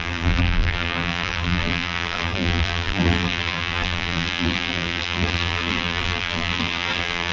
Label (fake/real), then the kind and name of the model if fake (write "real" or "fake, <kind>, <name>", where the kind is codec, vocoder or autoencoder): fake, vocoder, BigVGAN v2